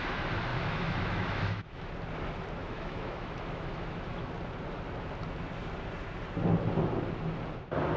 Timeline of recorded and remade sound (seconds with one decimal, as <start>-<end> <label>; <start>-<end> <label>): 0.0-0.5 recorded; 0.5-1.9 remade; 1.9-2.6 recorded; 2.6-4.3 remade; 4.3-8.0 recorded